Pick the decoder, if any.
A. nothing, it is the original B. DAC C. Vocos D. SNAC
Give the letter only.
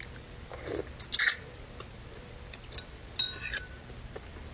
A